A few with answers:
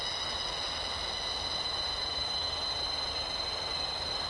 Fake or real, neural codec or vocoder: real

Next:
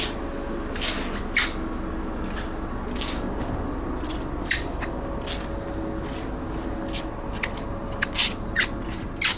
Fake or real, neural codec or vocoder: real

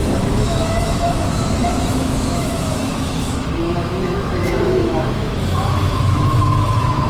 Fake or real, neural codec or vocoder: fake, autoencoder, DAC-VAE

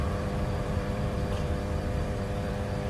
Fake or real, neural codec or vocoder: fake, vocoder, BigVGAN v2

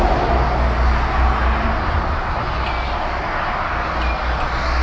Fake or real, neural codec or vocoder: real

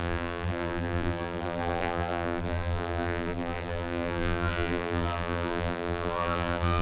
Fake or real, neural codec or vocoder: fake, vocoder, BigVGAN v2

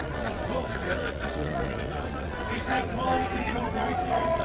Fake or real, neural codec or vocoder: fake, vocoder, WaveNeXt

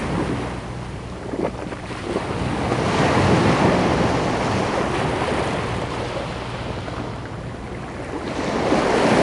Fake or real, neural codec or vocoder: real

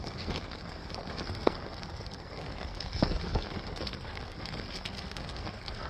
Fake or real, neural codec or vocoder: fake, codec, SNAC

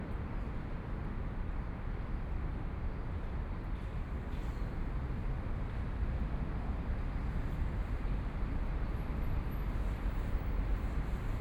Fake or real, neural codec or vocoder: fake, vocoder, BigVGAN v2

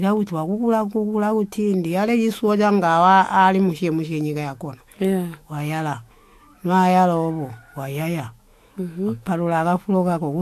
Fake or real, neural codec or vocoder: fake, autoencoder, DAC-VAE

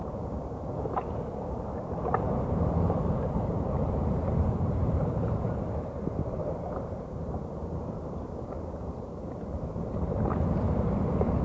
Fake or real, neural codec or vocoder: fake, vocoder, BigVGAN v2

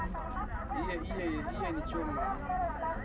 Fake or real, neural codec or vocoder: real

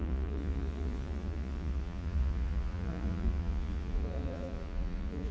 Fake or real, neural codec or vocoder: fake, vocoder, Vocos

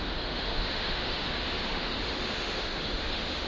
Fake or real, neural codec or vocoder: fake, autoencoder, DAC-VAE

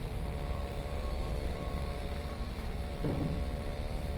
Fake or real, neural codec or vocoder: fake, vocoder, BigVGAN v2